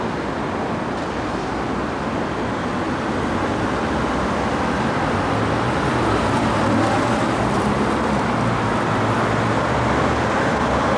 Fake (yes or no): no